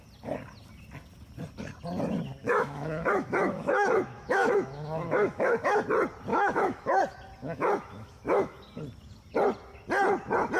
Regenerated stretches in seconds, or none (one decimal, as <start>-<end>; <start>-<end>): 2.4-5.8; 6.3-7.0; 7.4-8.6